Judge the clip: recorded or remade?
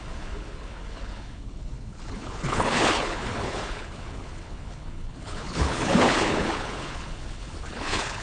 remade